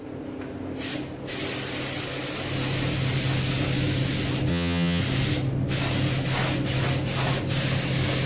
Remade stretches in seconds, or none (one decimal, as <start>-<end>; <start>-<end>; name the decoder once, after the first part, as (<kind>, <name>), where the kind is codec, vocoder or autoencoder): 4.5-5.0 (vocoder, HiFi-GAN)